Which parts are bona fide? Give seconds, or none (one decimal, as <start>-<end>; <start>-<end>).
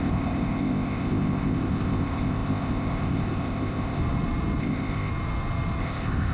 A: 4.0-4.6; 5.1-5.8